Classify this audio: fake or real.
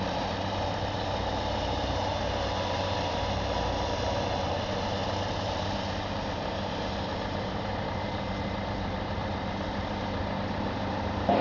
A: fake